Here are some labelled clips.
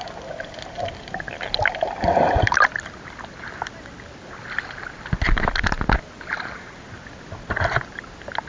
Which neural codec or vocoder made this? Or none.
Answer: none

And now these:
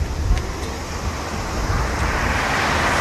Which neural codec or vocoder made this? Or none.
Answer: none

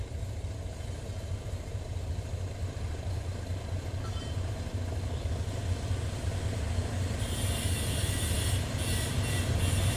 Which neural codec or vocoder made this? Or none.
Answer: none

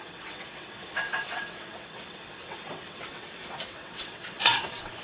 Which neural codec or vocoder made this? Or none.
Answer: vocoder, WaveNeXt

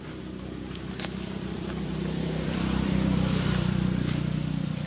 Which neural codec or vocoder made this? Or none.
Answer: vocoder, BigVGAN v2